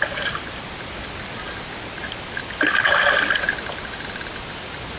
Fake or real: real